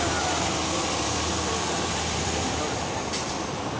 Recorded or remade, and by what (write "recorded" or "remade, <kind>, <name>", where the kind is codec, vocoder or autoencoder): remade, vocoder, BigVGAN v2